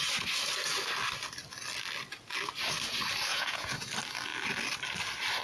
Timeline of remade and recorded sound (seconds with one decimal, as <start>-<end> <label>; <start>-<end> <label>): 0.0-3.3 recorded; 3.3-3.9 remade; 3.9-5.4 recorded